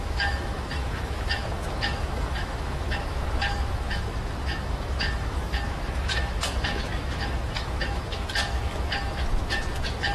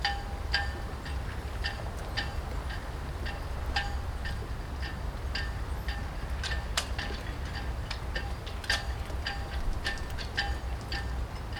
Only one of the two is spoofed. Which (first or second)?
first